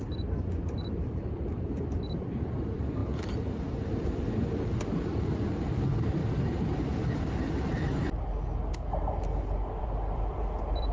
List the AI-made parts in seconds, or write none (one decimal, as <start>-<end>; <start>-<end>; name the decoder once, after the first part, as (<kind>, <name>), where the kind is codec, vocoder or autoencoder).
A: 0.0-3.0 (vocoder, BigVGAN v2); 3.9-6.2; 9.8-10.9